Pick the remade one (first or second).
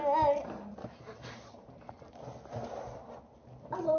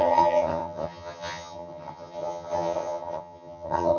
second